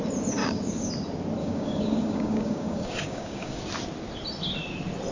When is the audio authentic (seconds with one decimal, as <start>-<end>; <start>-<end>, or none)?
0.0-0.4; 0.9-1.4; 3.6-5.1